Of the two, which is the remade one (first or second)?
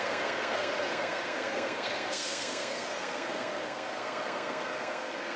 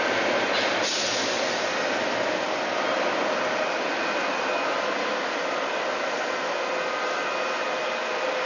first